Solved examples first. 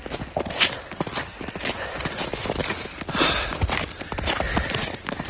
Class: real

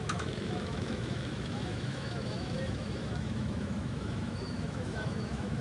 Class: fake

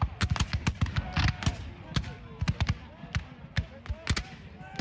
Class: real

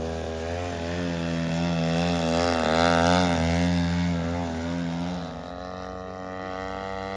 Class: real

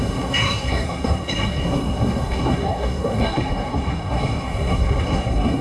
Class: fake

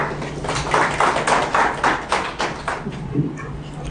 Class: real